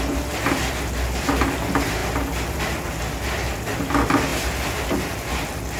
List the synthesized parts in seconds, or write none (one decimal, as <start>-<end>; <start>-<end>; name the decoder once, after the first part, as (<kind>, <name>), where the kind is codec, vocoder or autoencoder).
none